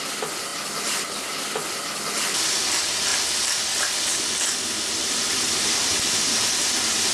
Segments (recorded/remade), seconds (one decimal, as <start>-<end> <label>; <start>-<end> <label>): 0.0-7.1 recorded